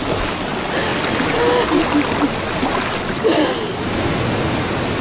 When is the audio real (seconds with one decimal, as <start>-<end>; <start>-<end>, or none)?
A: 0.0-5.0

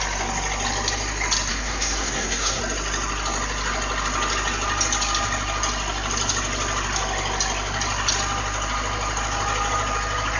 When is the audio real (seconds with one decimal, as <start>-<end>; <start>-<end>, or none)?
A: 0.0-1.5; 2.6-10.4

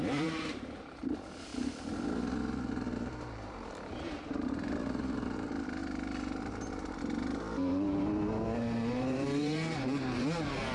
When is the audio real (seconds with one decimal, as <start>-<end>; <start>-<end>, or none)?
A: 1.5-2.6

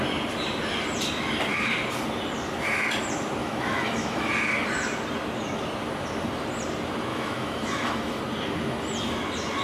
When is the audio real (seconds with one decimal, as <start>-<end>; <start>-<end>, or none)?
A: 0.0-3.4; 4.3-7.1; 8.2-9.6

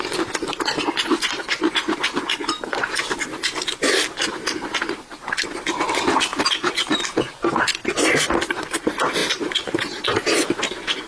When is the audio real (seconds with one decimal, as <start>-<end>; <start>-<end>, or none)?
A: 0.0-6.3; 7.5-9.2; 10.0-11.1

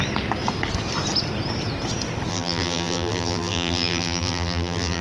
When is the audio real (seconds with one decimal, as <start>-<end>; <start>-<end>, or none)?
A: 0.0-2.3

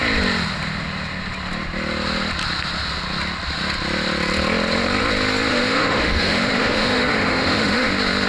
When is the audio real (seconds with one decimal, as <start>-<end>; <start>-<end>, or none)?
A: 0.0-5.5; 7.9-8.3

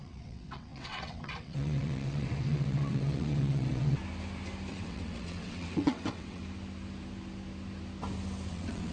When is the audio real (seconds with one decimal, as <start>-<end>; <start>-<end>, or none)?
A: 4.0-4.7; 6.4-8.5